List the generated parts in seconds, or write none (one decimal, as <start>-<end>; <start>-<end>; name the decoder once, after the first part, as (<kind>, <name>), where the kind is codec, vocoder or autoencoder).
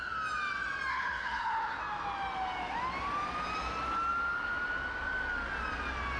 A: 0.9-1.8 (codec, HILCodec)